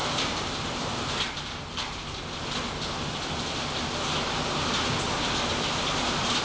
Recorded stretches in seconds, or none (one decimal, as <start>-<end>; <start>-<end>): 2.2-6.4